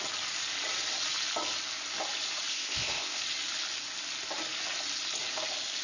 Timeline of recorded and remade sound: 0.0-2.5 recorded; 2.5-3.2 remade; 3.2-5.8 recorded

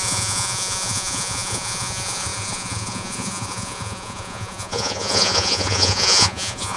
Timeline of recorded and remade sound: 0.0-6.8 remade

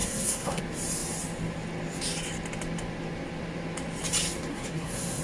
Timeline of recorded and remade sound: 0.0-0.6 remade; 0.6-4.5 recorded; 4.5-5.2 remade

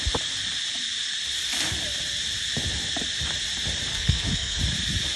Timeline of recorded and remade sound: 0.0-3.9 recorded; 3.9-4.6 remade; 4.6-5.2 recorded

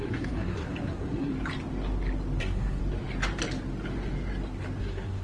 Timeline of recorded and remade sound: 0.0-1.3 remade; 1.3-2.4 recorded; 2.4-2.8 remade; 2.8-4.8 recorded; 4.8-5.2 remade